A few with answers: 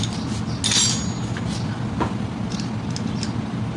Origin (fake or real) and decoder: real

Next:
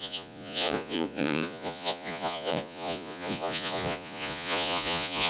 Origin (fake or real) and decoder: fake, vocoder, Vocos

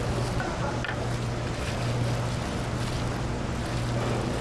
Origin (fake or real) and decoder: real